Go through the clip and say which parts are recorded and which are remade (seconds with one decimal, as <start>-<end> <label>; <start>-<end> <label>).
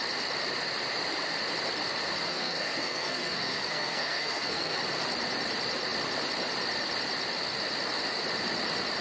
0.0-2.3 recorded; 2.3-4.8 remade; 4.8-9.0 recorded